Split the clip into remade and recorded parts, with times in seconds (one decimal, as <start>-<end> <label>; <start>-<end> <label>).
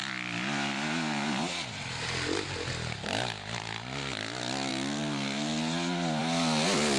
0.0-7.0 recorded